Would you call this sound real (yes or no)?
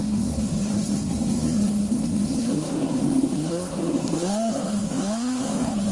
no